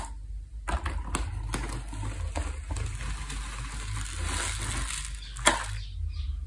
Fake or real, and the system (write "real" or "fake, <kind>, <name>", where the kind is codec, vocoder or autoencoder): real